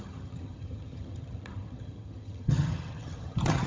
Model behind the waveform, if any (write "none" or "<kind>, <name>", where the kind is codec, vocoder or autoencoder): vocoder, HiFi-GAN